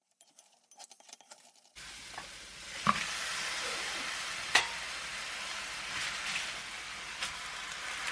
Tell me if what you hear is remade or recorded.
recorded